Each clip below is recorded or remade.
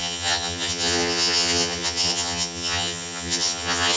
remade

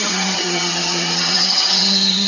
remade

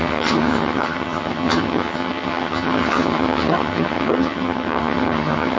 remade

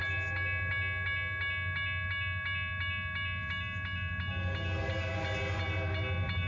recorded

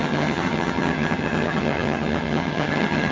remade